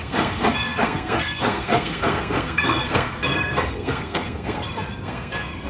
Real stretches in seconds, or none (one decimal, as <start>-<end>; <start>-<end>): none